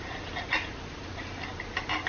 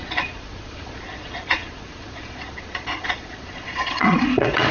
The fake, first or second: second